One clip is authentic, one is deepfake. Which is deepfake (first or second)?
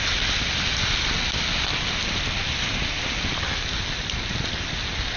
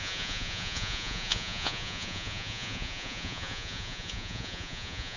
second